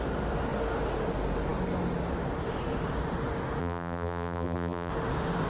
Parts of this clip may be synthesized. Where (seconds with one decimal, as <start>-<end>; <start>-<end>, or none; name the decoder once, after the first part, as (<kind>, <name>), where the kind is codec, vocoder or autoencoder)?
3.6-4.9 (vocoder, BigVGAN v2)